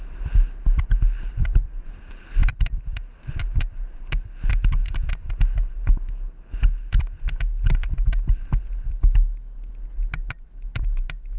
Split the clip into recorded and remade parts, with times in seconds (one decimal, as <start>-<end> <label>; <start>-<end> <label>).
0.0-11.4 recorded